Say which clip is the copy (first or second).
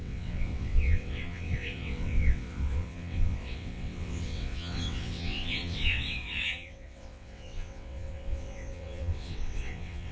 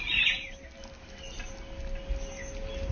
first